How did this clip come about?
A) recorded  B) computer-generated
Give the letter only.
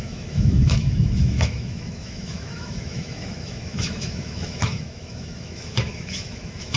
B